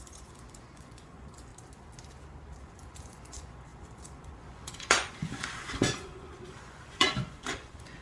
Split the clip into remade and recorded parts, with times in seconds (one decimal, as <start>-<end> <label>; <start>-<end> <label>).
0.0-1.5 remade; 1.5-2.6 recorded; 2.6-8.0 remade